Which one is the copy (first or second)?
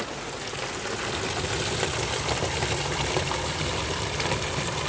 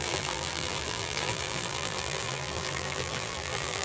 second